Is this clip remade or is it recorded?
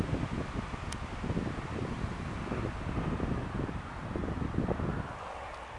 recorded